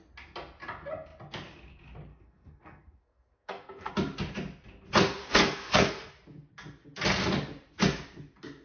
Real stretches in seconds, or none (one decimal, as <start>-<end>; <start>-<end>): 0.0-2.1; 3.9-5.2; 6.1-8.6